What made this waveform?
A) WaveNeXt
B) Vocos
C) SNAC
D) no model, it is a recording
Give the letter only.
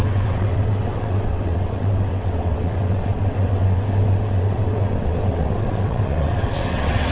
A